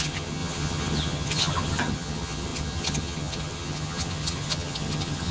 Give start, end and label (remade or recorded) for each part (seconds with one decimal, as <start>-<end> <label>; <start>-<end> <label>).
0.0-5.3 remade